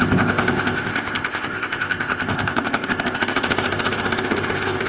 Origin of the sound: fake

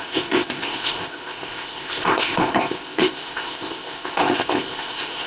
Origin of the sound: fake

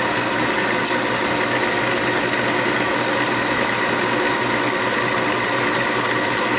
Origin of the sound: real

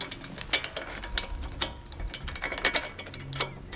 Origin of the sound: real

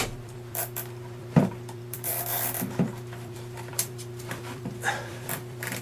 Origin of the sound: fake